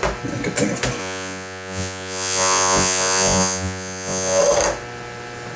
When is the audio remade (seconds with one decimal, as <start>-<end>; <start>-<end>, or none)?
1.0-4.4